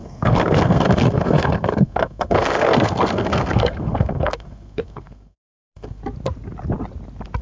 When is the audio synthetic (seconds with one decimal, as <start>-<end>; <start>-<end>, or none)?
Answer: 0.0-6.0